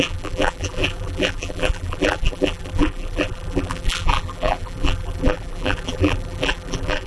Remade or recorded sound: remade